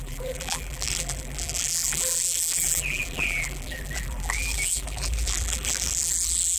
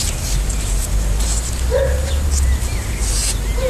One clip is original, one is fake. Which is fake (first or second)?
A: first